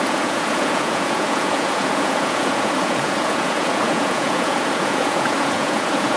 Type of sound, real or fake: fake